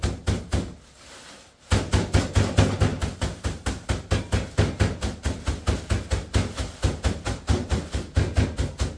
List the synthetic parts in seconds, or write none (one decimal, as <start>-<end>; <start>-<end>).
2.9-4.2